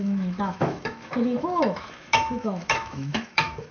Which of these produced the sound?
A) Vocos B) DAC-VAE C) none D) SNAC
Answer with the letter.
B